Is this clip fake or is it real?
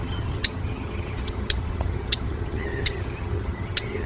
fake